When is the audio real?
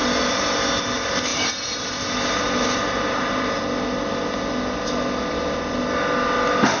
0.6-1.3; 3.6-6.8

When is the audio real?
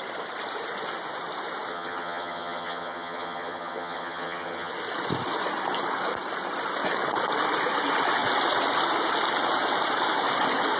0.0-1.7; 4.7-10.8